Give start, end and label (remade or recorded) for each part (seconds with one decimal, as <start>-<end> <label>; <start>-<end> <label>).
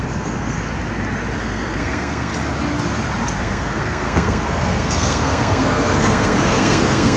0.0-0.7 remade; 0.7-1.4 recorded; 1.4-2.3 remade; 2.3-3.4 recorded; 3.4-7.2 remade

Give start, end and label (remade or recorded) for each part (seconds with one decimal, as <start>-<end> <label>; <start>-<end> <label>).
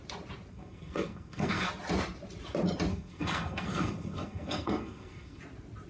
0.0-0.5 recorded; 0.5-1.7 remade; 1.7-2.9 recorded; 2.9-5.4 remade; 5.4-5.9 recorded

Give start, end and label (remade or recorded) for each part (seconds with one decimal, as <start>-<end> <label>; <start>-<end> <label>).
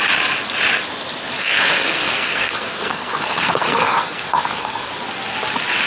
0.0-1.4 recorded; 1.4-4.9 remade; 4.9-5.9 recorded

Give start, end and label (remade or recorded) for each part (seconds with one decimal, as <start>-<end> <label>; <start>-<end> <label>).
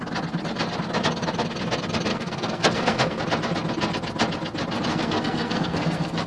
0.0-2.1 recorded; 2.1-3.2 remade; 3.2-4.9 recorded; 4.9-6.3 remade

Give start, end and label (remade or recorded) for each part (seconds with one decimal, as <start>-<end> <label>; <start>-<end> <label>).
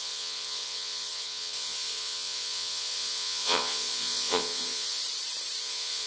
0.0-5.0 remade; 5.0-5.6 recorded; 5.6-6.1 remade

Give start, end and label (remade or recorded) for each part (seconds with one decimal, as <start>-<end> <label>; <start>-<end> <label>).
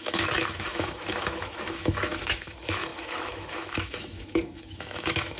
0.0-5.4 remade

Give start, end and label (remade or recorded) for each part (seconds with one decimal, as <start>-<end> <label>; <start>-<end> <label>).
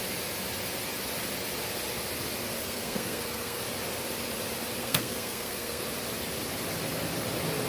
0.0-2.6 recorded; 2.6-3.6 remade; 3.6-4.8 recorded; 4.8-5.8 remade; 5.8-7.7 recorded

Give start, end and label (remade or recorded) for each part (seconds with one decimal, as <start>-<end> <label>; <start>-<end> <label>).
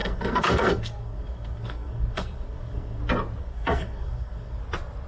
0.0-3.0 remade; 3.0-3.4 recorded; 3.4-4.6 remade; 4.6-5.1 recorded